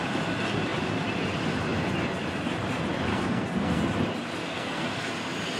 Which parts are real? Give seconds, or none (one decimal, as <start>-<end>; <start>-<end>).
0.0-3.1; 3.8-4.4; 5.1-5.6